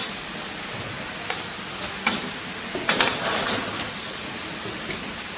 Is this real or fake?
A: real